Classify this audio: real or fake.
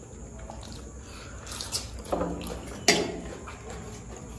real